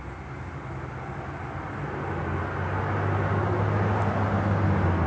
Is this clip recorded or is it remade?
recorded